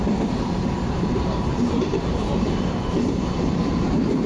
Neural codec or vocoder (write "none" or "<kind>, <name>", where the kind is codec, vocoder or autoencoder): vocoder, BigVGAN v2